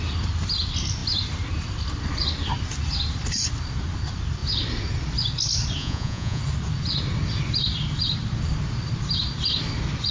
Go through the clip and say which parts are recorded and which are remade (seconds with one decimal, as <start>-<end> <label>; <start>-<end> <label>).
0.0-5.8 recorded; 5.8-6.4 remade; 6.4-10.1 recorded